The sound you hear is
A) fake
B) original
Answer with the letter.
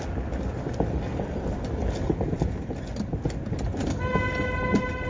B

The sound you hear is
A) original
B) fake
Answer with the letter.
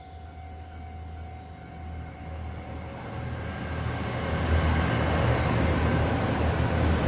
A